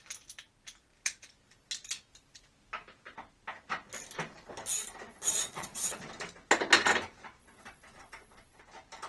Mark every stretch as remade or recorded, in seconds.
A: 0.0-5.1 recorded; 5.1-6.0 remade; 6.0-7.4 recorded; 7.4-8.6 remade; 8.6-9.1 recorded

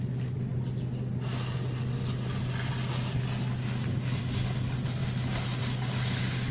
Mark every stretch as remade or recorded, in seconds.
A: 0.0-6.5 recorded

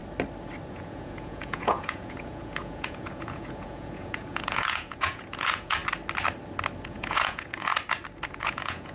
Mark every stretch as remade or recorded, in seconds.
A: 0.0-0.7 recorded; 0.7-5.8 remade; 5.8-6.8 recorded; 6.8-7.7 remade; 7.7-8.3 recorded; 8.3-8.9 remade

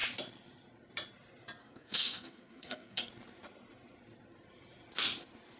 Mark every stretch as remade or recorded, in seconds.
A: 0.0-1.6 recorded; 1.6-3.1 remade; 3.1-5.6 recorded

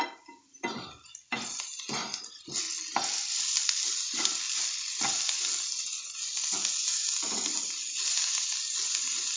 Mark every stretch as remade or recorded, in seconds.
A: 0.0-9.4 recorded

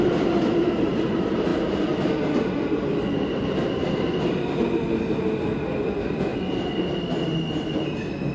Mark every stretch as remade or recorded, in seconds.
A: 0.0-8.3 recorded

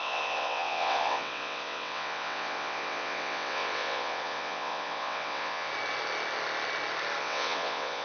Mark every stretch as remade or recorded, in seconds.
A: 0.0-5.7 remade; 5.7-7.2 recorded; 7.2-8.0 remade

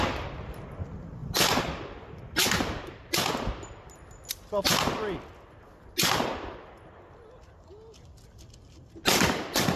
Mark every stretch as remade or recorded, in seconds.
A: 0.0-9.8 recorded